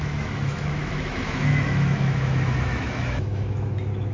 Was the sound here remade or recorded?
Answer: remade